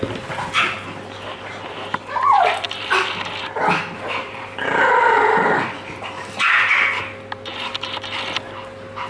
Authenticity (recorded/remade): recorded